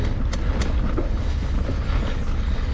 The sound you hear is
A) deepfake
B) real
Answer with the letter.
B